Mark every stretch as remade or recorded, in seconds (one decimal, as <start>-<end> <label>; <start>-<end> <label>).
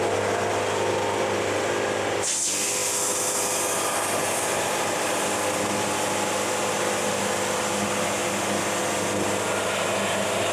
0.0-10.5 recorded